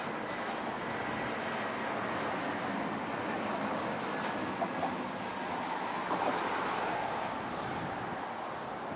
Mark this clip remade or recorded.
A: recorded